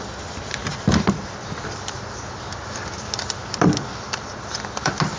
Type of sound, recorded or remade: recorded